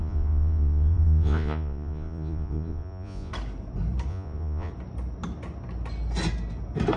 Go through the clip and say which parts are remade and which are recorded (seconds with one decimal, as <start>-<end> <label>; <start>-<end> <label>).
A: 0.0-3.3 remade; 3.3-4.1 recorded; 4.1-4.7 remade; 4.7-7.0 recorded